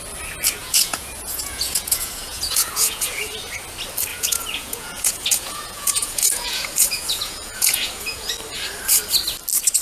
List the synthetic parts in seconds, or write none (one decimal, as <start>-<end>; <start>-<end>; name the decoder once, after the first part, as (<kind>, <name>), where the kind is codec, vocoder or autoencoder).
0.6-3.3 (vocoder, Vocos); 4.1-8.3